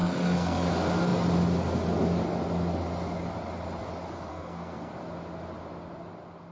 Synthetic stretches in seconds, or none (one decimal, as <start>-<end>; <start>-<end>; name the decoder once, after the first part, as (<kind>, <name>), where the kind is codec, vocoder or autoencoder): 0.0-0.7 (codec, SNAC); 4.3-4.9